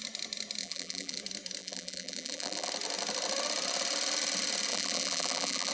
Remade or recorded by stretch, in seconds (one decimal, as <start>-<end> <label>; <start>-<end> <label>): 0.0-0.6 recorded; 0.6-1.2 remade; 1.2-1.6 recorded; 1.6-2.7 remade; 2.7-4.7 recorded; 4.7-5.7 remade